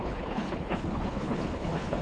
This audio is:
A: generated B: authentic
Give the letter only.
A